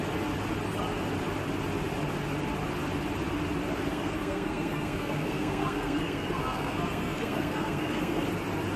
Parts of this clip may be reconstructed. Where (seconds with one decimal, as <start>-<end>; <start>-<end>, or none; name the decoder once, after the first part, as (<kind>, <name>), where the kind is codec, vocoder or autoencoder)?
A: 3.9-8.2 (codec, SNAC)